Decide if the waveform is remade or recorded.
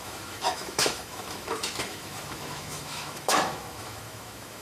remade